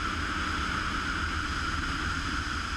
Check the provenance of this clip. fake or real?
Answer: real